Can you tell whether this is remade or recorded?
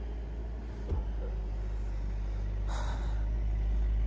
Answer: recorded